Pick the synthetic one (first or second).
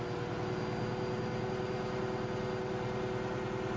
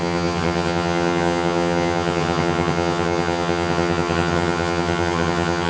second